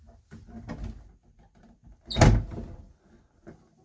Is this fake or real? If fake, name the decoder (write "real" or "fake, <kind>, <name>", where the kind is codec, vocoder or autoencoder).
real